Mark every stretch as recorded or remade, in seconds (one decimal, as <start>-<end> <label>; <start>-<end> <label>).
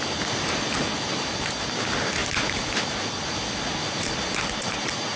0.0-5.2 recorded